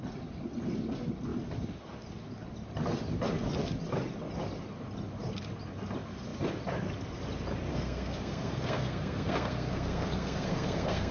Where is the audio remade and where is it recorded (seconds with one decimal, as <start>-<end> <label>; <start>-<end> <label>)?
0.0-7.7 recorded; 7.7-11.1 remade